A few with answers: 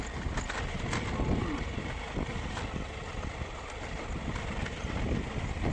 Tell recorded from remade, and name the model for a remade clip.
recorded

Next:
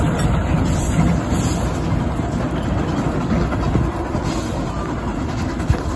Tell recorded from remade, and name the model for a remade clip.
recorded